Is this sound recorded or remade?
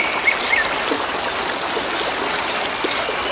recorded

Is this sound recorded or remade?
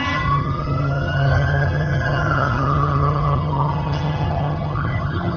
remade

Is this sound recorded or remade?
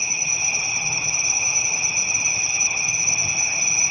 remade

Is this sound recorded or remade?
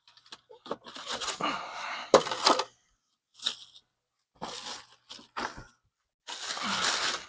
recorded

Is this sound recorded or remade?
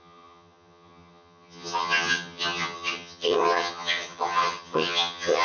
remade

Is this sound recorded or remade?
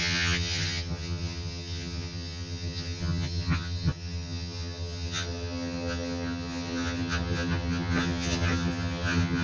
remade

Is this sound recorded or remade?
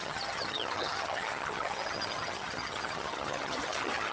remade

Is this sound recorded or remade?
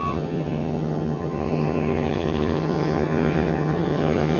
remade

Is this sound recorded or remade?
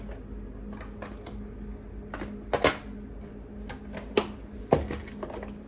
recorded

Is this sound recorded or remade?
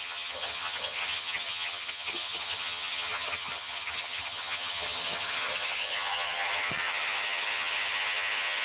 remade